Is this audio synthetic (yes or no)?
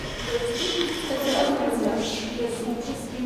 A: no